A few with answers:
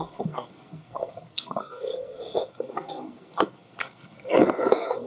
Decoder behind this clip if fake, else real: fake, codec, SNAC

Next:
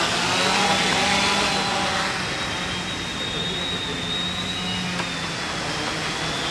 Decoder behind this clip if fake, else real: real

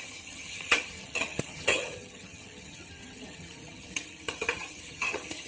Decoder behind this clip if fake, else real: fake, vocoder, HiFi-GAN